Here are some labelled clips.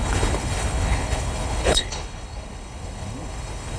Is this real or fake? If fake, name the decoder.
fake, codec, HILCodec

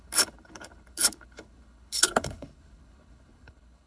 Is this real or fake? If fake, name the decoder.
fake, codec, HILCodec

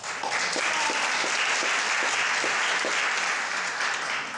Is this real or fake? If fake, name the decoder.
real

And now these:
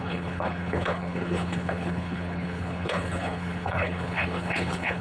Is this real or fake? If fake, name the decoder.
fake, codec, HILCodec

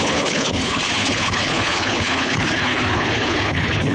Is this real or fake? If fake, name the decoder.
fake, codec, HILCodec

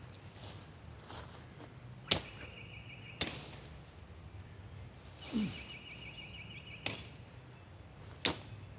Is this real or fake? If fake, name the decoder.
real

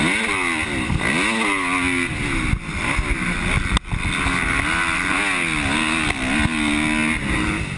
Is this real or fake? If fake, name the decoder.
real